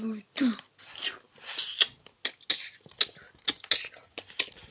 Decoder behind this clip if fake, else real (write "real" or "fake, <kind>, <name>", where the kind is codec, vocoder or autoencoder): real